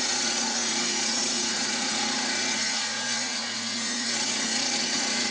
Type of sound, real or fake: fake